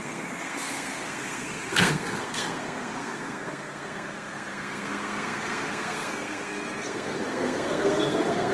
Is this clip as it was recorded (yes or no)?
no